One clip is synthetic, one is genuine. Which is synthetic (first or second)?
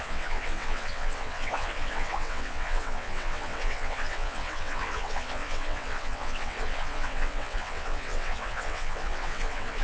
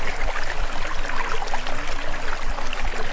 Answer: first